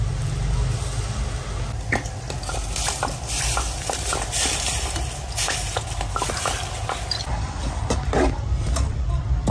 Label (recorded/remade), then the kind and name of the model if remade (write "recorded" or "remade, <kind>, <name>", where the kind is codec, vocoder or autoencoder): recorded